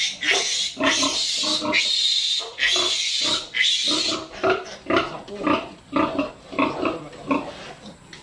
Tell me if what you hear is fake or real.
real